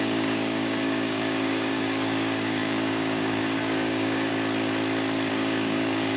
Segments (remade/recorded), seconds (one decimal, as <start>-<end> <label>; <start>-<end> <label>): 0.0-4.3 remade; 4.3-5.3 recorded; 5.3-6.2 remade